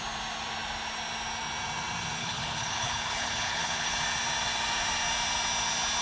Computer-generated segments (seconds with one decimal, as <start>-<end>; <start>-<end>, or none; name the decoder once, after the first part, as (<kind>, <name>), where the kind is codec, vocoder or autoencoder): 2.2-3.9 (codec, HILCodec)